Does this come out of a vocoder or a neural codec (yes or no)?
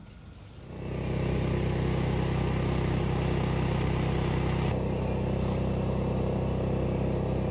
no